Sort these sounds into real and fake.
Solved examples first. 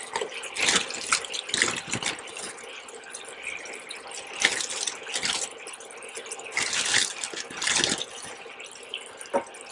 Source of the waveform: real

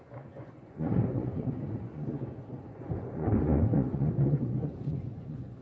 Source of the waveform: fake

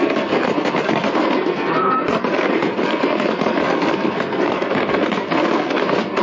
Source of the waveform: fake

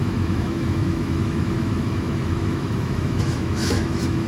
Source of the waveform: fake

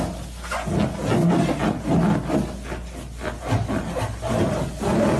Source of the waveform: real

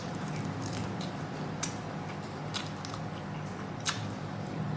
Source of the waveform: real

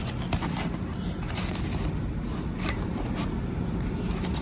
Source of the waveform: real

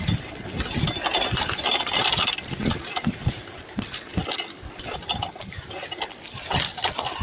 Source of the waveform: fake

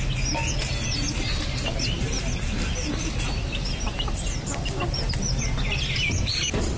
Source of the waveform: real